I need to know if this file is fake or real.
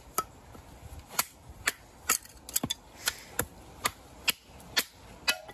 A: real